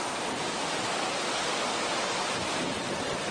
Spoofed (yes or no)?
no